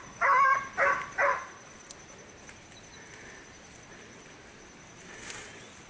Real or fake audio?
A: real